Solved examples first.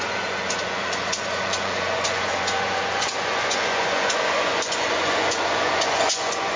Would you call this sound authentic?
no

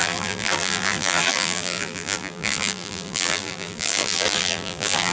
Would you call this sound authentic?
no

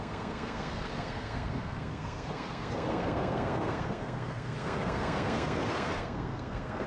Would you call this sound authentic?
no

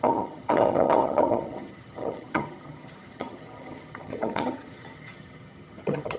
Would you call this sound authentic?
no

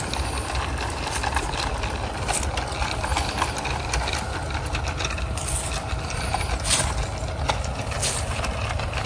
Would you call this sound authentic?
yes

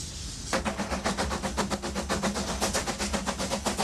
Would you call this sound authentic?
yes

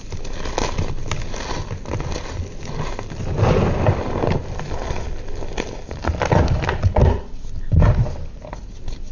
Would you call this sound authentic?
yes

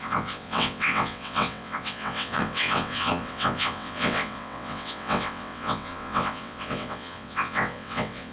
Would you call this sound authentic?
no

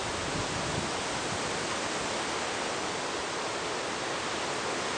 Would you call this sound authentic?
yes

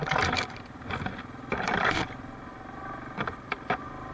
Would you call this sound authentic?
yes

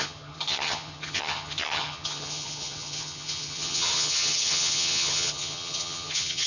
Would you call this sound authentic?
no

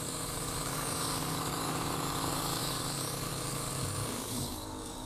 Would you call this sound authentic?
no